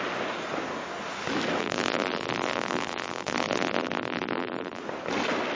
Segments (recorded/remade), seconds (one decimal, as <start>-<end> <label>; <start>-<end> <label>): 0.0-1.6 recorded; 1.6-4.8 remade; 4.8-5.6 recorded